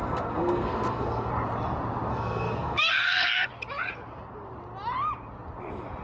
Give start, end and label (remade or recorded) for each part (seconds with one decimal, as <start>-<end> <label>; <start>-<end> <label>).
0.0-1.3 remade; 1.3-2.1 recorded; 2.1-3.5 remade; 3.5-6.0 recorded